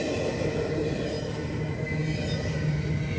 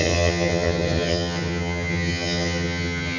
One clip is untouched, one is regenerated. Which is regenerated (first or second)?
second